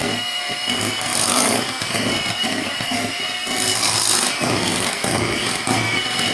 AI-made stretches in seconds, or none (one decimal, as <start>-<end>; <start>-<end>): 0.0-6.3